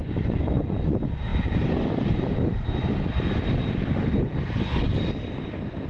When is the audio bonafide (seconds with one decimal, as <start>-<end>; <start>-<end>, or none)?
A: 0.9-5.9